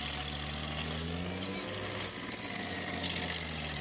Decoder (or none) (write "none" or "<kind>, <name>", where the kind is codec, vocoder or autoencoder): none